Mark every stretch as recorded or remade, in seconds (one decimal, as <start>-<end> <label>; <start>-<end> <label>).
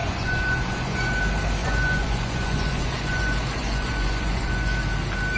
0.0-1.2 remade; 1.2-1.6 recorded; 1.6-4.8 remade; 4.8-5.4 recorded